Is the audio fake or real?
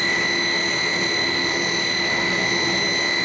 real